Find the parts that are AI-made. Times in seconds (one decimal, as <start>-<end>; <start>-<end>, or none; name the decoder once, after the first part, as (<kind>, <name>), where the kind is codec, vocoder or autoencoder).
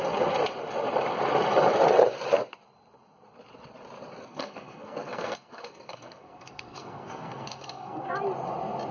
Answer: 4.2-8.2 (codec, SNAC)